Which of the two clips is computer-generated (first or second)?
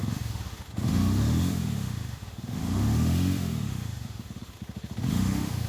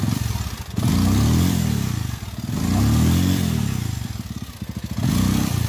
first